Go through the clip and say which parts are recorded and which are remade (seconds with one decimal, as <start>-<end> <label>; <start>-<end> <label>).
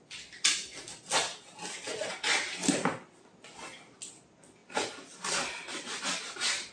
0.0-6.7 recorded